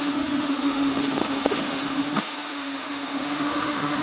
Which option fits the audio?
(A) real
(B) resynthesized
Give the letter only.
B